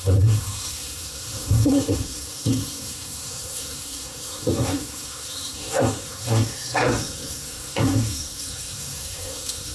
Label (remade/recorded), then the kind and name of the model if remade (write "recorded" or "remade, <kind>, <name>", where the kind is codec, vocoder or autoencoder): remade, codec, SNAC